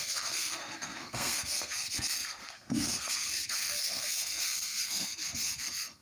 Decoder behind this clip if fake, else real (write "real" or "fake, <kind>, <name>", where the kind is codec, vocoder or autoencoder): fake, codec, SNAC